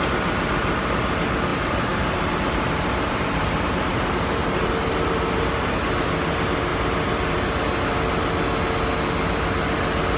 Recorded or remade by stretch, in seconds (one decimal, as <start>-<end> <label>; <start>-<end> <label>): 0.0-1.5 recorded; 1.5-5.8 remade; 5.8-10.2 recorded